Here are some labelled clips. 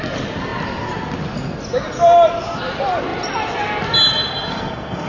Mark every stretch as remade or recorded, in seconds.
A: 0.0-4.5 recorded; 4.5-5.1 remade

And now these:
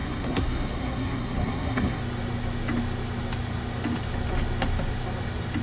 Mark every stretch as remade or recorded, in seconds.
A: 0.0-2.0 remade; 2.0-5.6 recorded

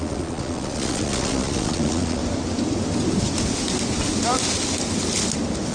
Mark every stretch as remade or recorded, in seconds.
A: 0.0-2.2 remade; 2.2-5.7 recorded

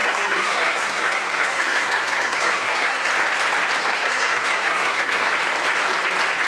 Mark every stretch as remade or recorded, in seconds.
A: 0.0-3.1 remade; 3.1-3.9 recorded; 3.9-5.3 remade; 5.3-6.5 recorded